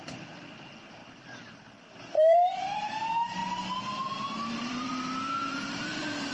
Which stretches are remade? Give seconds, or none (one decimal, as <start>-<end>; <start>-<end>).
0.0-3.4; 4.5-4.9; 5.5-6.3